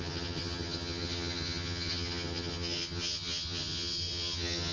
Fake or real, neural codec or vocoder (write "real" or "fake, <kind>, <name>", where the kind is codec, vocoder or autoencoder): fake, vocoder, HiFi-GAN